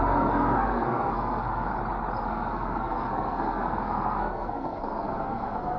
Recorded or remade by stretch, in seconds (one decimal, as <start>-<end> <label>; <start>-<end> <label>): 0.0-1.7 remade; 1.7-2.2 recorded; 2.2-5.8 remade